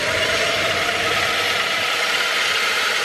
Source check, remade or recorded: remade